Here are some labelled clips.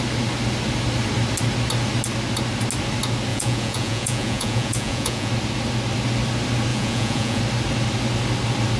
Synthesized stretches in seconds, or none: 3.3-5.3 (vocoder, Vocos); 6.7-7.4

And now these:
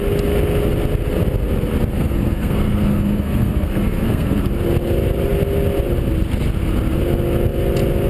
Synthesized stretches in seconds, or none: 1.9-4.5 (codec, SNAC)